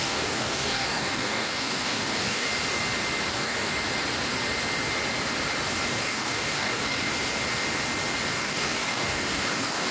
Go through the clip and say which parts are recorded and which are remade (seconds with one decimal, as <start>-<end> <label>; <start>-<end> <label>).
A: 0.0-2.5 remade; 2.5-3.3 recorded; 3.3-3.7 remade; 3.7-5.9 recorded; 5.9-7.1 remade; 7.1-8.3 recorded; 8.3-9.9 remade